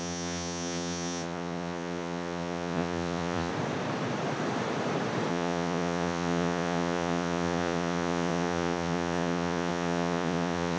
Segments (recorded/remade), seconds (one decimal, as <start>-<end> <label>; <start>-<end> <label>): 0.0-3.5 remade; 3.5-5.3 recorded; 5.3-10.8 remade